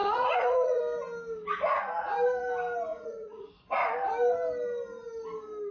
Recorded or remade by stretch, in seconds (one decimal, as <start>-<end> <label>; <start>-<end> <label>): 0.0-0.8 remade; 0.8-2.9 recorded; 2.9-3.5 remade; 3.5-5.7 recorded